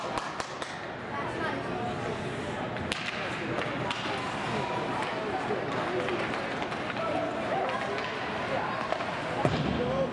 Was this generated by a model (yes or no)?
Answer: no